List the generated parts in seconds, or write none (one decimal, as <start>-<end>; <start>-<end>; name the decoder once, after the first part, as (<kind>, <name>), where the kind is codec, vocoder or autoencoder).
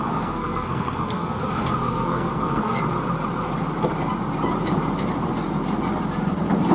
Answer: 0.0-2.8 (codec, SNAC)